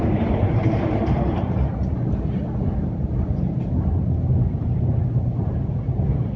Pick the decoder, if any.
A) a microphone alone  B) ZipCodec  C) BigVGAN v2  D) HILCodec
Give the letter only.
C